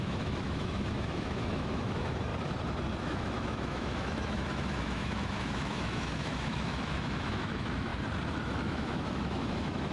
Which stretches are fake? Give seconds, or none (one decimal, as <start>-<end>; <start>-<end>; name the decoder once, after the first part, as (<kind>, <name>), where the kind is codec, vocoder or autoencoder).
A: 0.0-2.3 (autoencoder, DAC-VAE); 3.0-7.9; 8.4-9.9